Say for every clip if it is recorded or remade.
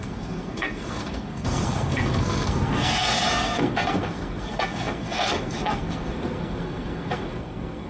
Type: remade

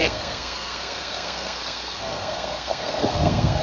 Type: remade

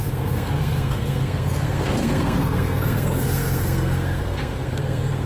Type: remade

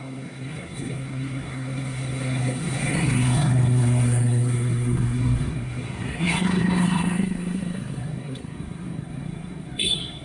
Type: remade